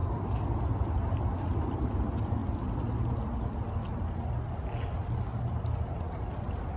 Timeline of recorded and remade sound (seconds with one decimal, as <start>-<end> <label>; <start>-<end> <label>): 0.0-6.8 recorded